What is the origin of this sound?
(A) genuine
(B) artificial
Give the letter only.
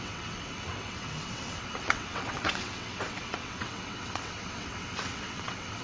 B